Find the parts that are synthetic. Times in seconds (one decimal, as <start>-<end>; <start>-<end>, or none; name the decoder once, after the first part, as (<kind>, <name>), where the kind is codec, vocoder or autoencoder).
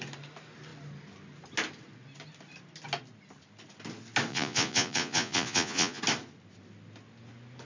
4.3-6.0 (vocoder, Vocos)